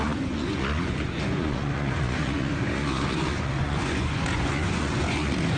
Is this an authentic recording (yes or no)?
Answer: no